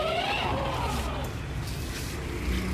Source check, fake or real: real